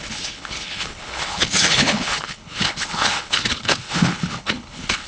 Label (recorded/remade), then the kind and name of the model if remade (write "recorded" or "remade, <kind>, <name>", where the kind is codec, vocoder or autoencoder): remade, codec, HILCodec